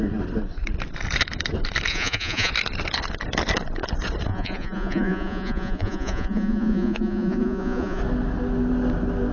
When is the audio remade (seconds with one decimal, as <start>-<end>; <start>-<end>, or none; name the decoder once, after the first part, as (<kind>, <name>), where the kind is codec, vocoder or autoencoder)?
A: 1.9-2.5 (vocoder, Vocos); 4.3-8.0